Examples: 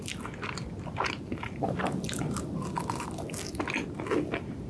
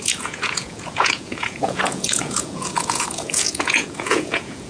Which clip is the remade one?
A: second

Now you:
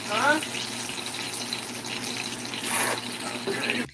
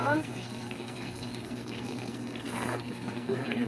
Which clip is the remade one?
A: second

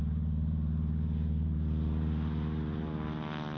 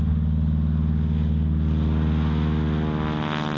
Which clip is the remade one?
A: first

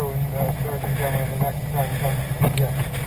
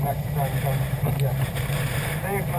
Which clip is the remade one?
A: second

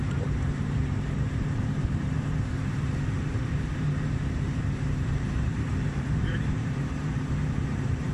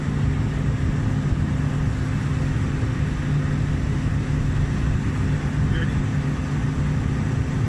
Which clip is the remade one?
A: first